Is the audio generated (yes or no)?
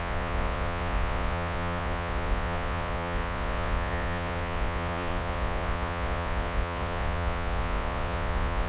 yes